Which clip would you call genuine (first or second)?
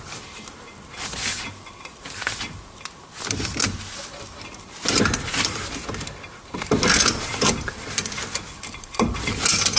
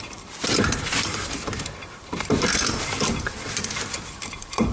first